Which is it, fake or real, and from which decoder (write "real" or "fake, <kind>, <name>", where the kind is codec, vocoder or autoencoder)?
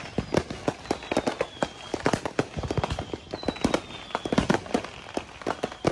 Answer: real